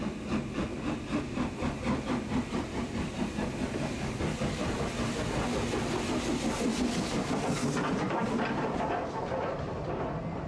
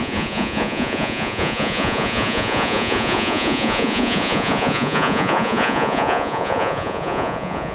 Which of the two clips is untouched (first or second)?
first